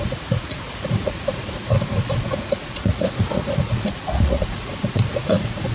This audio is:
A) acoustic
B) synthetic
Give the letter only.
B